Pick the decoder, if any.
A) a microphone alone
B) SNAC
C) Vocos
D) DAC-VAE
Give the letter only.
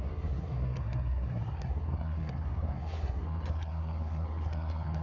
B